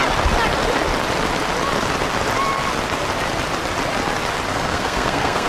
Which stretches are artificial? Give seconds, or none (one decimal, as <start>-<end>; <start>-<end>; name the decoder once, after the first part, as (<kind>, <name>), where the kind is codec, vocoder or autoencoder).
4.5-5.5 (codec, SNAC)

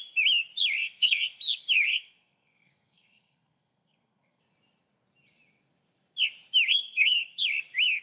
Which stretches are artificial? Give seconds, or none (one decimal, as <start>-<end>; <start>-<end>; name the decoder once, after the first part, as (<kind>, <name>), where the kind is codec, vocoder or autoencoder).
0.8-1.4 (codec, SNAC); 1.9-4.4; 6.7-7.4

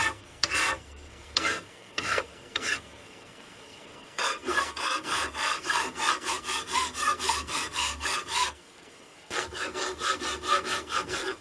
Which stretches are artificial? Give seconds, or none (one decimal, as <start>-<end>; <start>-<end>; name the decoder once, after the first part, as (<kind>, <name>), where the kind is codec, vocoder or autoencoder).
0.0-11.4 (codec, SNAC)

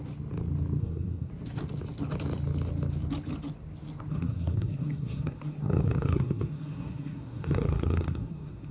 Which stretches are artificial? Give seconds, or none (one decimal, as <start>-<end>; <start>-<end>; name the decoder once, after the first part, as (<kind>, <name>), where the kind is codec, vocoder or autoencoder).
0.8-1.3 (codec, SNAC); 4.1-8.7

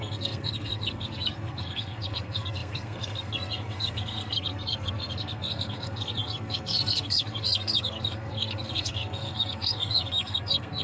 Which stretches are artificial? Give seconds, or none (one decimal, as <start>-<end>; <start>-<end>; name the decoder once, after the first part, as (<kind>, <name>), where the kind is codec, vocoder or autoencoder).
0.0-10.8 (codec, SNAC)

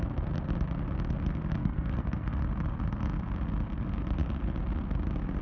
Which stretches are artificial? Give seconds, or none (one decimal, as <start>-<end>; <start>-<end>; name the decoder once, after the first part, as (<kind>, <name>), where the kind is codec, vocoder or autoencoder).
1.6-2.4 (codec, SNAC)